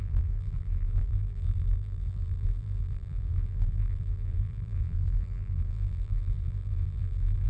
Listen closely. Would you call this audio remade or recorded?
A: remade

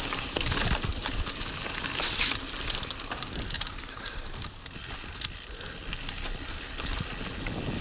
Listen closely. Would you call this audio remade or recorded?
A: recorded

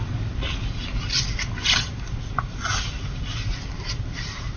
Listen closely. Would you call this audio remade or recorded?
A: recorded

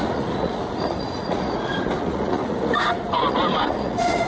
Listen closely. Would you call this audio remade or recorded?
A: remade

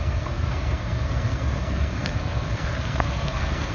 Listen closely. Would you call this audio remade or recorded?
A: remade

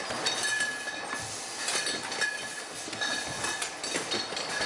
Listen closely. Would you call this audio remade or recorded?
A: recorded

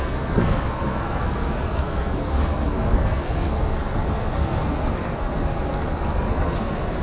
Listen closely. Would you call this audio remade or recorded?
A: remade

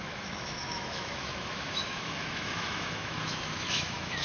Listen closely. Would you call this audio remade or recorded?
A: remade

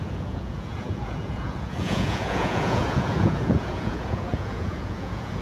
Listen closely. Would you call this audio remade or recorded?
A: remade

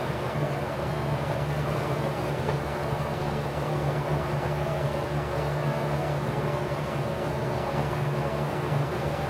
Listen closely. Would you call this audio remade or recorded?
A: remade